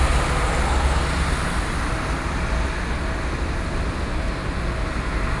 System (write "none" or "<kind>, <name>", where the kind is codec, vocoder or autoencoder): none